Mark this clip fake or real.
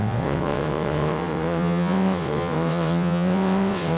fake